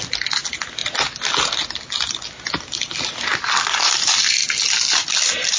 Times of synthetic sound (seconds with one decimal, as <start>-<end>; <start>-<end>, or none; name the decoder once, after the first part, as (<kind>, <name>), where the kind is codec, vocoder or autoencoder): none